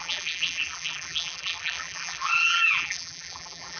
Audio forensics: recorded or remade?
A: remade